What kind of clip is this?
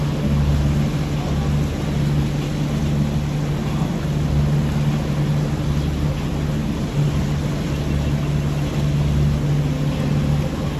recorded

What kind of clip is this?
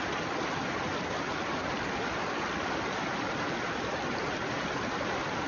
recorded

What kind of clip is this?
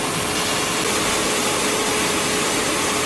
recorded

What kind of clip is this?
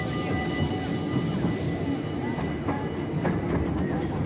recorded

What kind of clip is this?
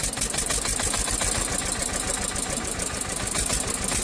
remade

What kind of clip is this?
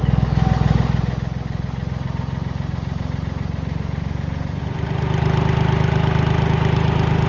recorded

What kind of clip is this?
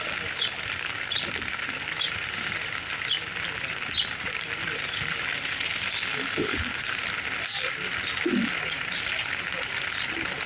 recorded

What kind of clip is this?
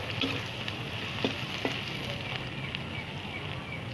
recorded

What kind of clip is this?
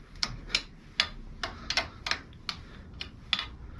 recorded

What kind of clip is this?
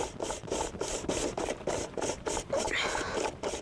remade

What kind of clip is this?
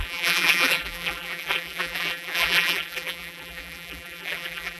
remade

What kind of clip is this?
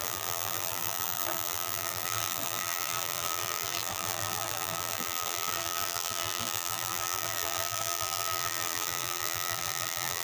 remade